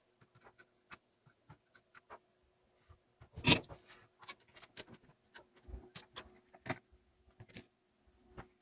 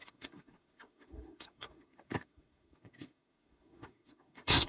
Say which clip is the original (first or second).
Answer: first